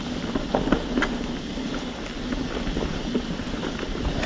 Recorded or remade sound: remade